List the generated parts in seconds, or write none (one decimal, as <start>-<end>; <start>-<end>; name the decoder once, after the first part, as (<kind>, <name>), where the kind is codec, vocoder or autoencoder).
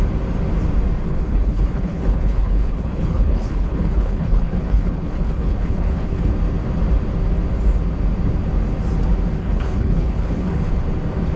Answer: 1.1-6.3 (codec, HILCodec); 9.4-10.7